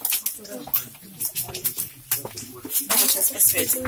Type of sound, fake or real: real